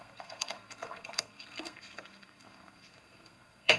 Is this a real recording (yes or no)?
no